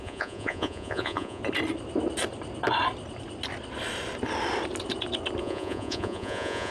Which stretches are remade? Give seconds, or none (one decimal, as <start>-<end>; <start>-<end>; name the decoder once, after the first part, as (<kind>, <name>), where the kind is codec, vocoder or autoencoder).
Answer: 0.0-1.4 (vocoder, Vocos); 5.4-6.7